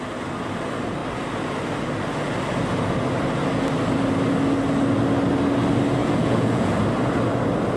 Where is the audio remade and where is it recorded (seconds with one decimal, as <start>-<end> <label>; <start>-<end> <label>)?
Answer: 0.0-6.0 recorded; 6.0-6.7 remade; 6.7-7.8 recorded